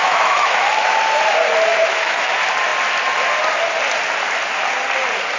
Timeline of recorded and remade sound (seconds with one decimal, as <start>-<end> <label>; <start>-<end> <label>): 0.0-0.7 remade; 0.7-1.7 recorded; 1.7-2.3 remade; 2.3-5.4 recorded